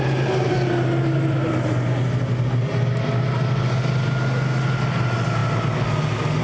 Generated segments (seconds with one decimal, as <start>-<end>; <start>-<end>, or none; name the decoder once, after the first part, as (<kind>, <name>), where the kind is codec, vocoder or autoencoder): none